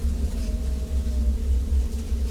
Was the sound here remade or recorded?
recorded